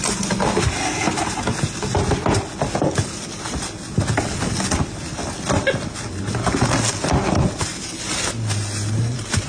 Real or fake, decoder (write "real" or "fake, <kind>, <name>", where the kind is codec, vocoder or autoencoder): real